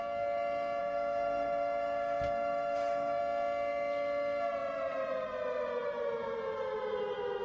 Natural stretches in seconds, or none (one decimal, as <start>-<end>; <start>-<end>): 0.0-0.8; 3.2-7.4